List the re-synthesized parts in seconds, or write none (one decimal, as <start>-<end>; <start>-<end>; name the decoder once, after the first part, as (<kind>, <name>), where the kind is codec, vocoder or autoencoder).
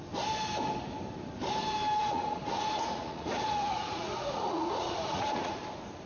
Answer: 2.0-5.6 (vocoder, Vocos)